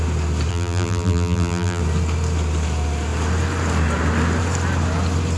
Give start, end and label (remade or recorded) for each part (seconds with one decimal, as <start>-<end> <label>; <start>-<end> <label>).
0.0-0.5 recorded; 0.5-1.8 remade; 1.8-5.4 recorded